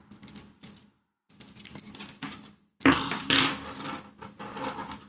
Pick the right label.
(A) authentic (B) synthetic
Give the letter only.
A